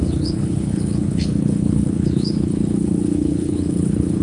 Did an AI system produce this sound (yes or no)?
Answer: yes